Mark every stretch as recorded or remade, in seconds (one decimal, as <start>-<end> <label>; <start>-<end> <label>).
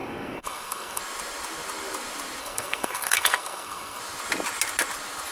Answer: 0.0-1.0 remade; 1.0-2.4 recorded; 2.4-4.0 remade; 4.0-5.3 recorded